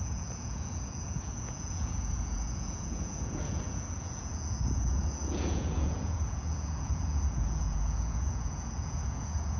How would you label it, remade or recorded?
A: remade